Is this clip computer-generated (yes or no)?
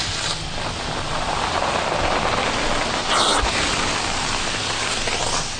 no